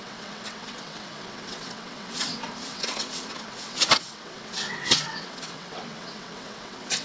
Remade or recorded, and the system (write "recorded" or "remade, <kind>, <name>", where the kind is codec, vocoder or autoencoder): remade, vocoder, WaveNeXt